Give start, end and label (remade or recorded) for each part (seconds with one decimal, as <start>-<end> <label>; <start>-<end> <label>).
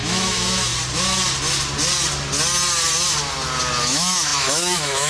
0.0-0.7 remade; 0.7-3.8 recorded; 3.8-5.1 remade